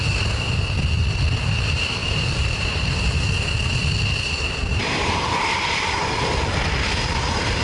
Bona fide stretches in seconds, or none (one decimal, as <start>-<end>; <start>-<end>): 0.0-2.0; 2.9-4.7; 6.0-7.6